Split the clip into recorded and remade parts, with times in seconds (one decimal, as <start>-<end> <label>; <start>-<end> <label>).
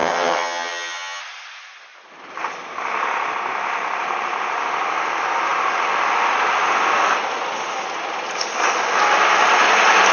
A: 0.0-1.2 remade; 1.2-10.1 recorded